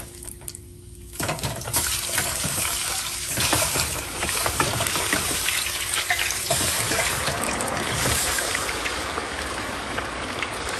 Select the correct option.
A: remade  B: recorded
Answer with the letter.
A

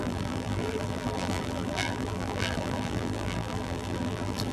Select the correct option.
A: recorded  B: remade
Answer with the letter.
B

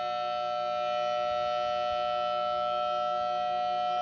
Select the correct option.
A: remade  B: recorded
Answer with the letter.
B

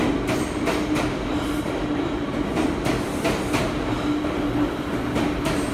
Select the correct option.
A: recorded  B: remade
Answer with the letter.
A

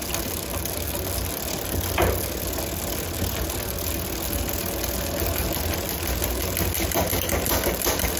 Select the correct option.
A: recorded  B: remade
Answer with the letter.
A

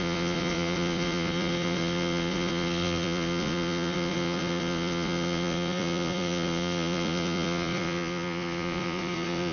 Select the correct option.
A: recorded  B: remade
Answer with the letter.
B